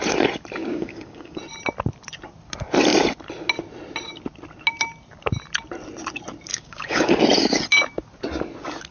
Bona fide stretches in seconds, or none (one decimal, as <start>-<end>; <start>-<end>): 0.0-0.6; 1.4-6.5; 7.2-8.9